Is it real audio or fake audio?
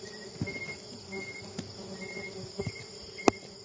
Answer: real